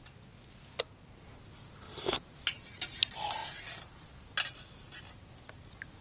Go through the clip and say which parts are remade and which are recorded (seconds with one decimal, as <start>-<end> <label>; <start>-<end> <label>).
0.0-6.0 recorded